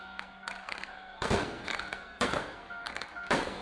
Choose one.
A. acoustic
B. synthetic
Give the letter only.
B